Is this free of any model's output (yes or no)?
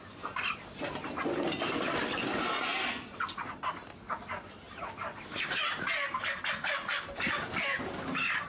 yes